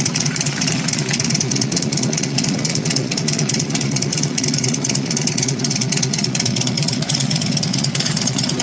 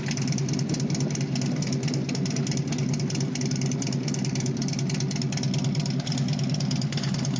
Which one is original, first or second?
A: second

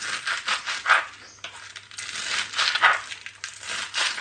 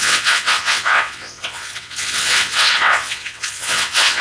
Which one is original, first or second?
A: first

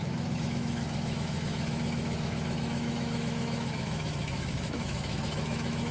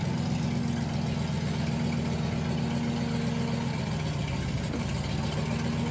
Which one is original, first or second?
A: second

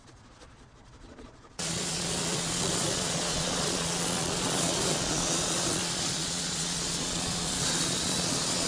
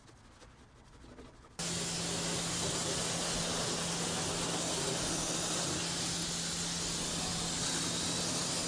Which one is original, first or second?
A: second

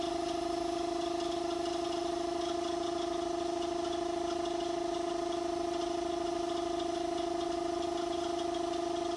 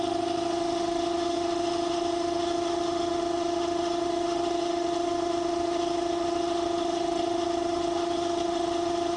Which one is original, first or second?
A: first